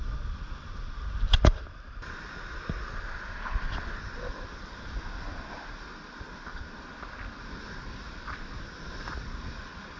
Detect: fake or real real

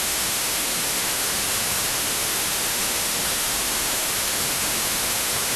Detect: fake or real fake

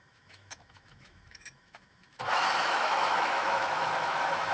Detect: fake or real fake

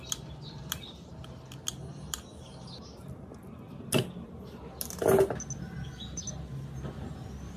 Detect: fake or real real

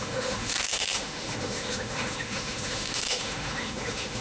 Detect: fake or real fake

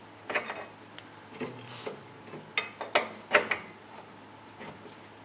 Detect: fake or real real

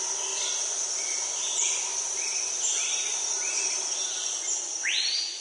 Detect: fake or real real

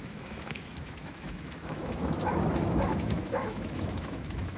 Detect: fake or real fake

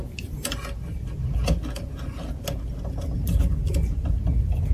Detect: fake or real real